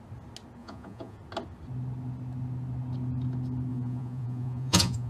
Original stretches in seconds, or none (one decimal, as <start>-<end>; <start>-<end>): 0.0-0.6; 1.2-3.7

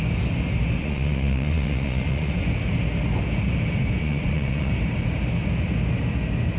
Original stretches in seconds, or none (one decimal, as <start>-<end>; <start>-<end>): 0.0-0.8; 2.3-3.8; 4.7-6.6

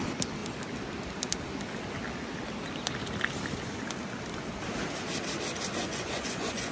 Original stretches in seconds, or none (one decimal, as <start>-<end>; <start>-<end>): 0.0-5.8

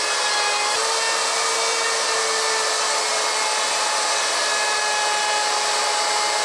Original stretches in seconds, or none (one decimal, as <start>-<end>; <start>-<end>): 0.0-6.4